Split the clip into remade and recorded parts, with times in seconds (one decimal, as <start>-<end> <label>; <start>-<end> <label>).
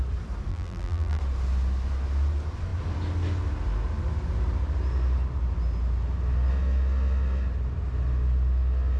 0.0-0.5 recorded; 0.5-1.2 remade; 1.2-9.0 recorded